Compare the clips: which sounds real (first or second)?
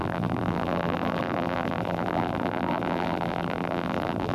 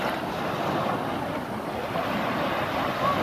second